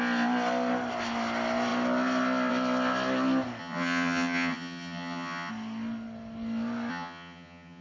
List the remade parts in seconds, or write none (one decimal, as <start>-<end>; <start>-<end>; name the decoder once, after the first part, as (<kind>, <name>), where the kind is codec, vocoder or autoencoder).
3.6-5.5 (vocoder, HiFi-GAN); 6.9-7.8